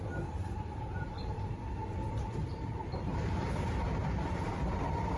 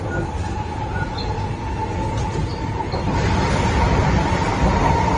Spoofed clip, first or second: first